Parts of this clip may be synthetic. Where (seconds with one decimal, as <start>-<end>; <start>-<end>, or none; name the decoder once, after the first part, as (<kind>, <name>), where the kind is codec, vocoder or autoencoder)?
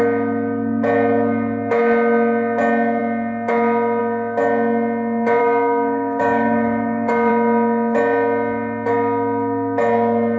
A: 5.4-7.3 (codec, DAC)